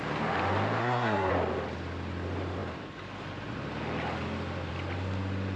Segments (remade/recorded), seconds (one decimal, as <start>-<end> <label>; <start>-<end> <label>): 0.0-0.8 recorded; 0.8-1.3 remade; 1.3-5.6 recorded